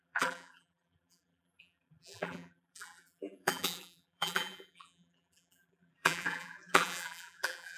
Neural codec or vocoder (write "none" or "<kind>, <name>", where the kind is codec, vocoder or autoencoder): vocoder, BigVGAN v2